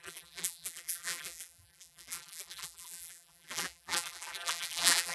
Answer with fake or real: fake